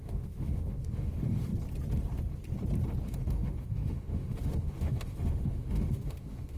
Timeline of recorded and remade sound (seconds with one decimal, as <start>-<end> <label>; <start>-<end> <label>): 0.0-1.5 remade; 1.5-3.0 recorded; 3.0-6.6 remade